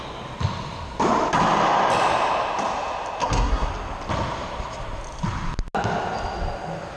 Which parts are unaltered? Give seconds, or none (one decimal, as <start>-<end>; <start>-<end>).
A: 0.0-3.2; 3.7-7.0